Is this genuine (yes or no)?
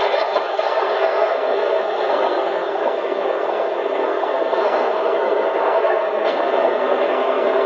no